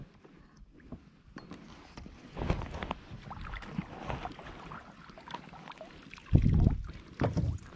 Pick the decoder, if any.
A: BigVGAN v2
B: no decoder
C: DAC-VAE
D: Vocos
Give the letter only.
B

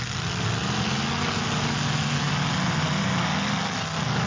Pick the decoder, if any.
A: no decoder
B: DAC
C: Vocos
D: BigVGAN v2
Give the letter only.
A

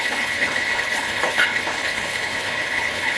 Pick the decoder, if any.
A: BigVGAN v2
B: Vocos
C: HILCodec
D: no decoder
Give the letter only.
C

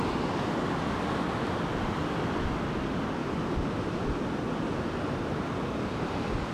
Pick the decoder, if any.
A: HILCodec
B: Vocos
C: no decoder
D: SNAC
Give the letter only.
C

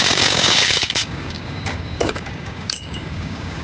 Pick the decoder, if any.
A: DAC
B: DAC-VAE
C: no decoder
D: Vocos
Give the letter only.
A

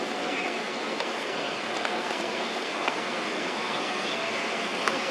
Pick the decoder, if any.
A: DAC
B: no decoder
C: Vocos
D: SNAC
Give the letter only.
D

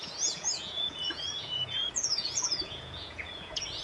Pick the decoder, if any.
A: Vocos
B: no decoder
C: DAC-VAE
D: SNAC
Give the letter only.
A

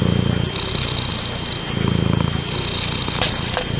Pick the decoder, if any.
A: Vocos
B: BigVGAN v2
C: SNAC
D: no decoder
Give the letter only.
D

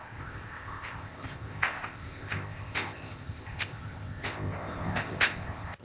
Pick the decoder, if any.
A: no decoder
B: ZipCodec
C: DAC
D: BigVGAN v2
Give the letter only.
B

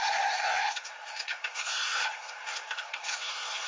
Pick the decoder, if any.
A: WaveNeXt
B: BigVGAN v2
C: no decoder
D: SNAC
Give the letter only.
D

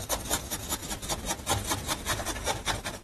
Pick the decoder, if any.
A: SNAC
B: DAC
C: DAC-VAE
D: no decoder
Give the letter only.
D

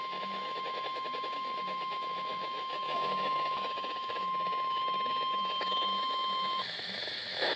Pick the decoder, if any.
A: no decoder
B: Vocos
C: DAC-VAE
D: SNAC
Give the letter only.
C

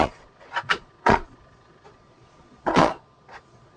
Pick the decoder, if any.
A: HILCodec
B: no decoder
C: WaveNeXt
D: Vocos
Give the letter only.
D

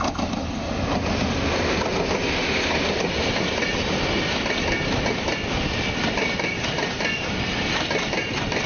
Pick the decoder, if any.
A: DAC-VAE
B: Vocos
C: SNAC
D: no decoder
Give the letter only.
D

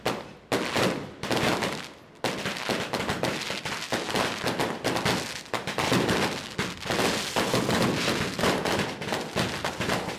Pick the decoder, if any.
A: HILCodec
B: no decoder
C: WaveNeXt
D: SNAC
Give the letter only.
B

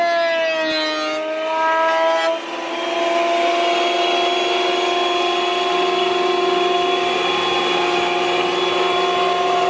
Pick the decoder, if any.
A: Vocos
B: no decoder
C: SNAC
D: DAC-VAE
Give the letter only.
B